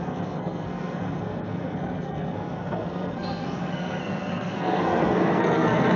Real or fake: fake